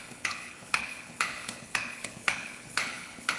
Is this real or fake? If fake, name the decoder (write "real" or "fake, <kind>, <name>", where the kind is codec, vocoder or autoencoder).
fake, codec, HILCodec